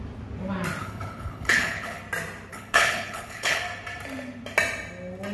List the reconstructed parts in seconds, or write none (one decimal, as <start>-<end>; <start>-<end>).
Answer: 0.8-2.0; 2.5-3.6